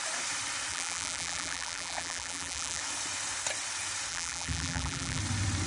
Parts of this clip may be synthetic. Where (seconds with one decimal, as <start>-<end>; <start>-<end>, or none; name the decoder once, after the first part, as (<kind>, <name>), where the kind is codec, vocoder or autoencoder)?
0.7-2.8 (vocoder, BigVGAN v2); 4.1-5.2